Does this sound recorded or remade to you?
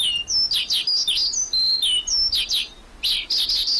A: recorded